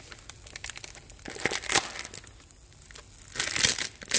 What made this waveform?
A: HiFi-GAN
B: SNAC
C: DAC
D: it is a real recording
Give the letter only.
D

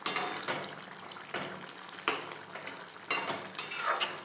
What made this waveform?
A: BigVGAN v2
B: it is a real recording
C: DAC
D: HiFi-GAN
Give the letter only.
B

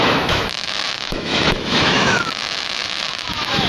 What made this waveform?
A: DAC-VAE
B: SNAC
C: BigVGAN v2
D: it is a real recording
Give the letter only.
A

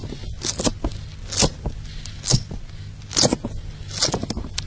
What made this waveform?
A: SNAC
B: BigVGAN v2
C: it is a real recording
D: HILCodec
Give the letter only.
C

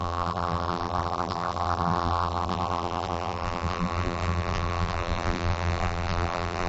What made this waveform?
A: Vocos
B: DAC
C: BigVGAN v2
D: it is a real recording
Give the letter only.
C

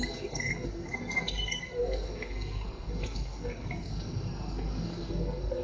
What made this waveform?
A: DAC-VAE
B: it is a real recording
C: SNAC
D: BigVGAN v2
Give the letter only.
C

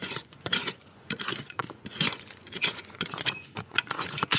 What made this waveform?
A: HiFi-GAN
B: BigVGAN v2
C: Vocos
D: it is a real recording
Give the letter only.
C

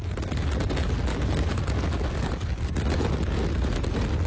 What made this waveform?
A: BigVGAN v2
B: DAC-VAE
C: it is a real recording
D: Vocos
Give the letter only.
C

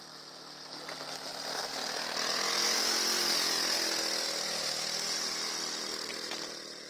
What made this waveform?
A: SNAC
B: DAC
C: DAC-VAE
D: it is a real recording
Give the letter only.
D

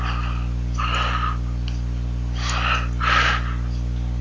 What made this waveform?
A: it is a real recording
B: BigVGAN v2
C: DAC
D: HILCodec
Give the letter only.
A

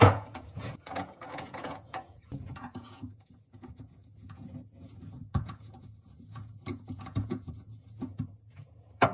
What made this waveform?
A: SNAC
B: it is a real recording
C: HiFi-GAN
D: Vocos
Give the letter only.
D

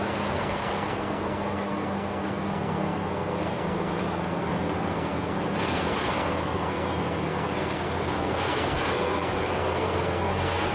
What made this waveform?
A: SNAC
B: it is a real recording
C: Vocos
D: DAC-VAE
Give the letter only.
A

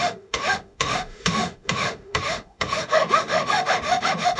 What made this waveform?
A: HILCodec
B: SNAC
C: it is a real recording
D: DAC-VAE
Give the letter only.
D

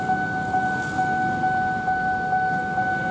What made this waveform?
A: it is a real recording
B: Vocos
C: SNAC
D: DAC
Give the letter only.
A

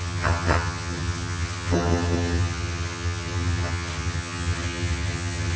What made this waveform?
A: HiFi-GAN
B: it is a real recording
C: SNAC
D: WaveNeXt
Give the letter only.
A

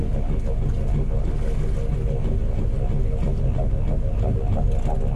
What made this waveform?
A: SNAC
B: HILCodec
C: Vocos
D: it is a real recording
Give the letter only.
D